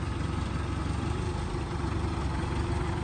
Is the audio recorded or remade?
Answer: recorded